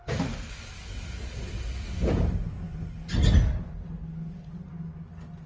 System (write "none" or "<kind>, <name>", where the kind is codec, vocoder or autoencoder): none